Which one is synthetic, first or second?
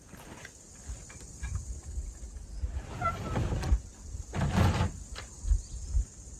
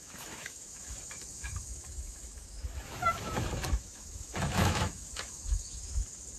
second